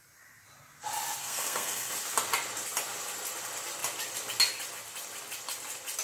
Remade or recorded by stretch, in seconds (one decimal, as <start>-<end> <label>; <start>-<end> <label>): 0.0-1.2 recorded; 1.2-1.9 remade; 1.9-6.0 recorded